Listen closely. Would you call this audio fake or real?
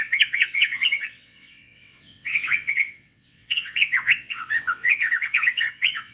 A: fake